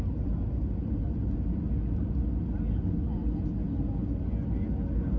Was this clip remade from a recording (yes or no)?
no